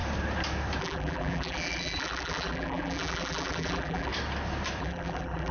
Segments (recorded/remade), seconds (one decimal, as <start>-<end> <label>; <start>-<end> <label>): 0.0-0.8 recorded; 0.8-4.1 remade; 4.1-4.8 recorded; 4.8-5.5 remade